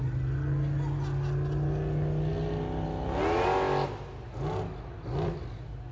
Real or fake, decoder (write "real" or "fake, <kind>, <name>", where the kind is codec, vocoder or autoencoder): real